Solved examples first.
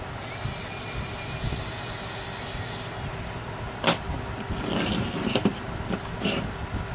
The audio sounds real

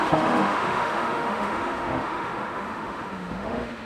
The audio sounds fake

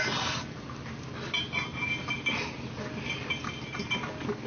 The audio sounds real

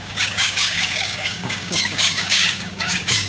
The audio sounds fake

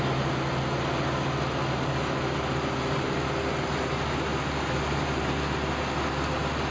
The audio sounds real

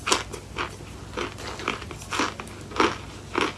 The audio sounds real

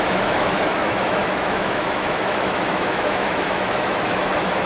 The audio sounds fake